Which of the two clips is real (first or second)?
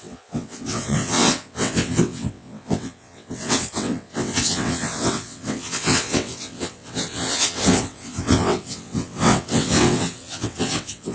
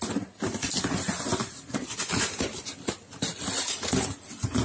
second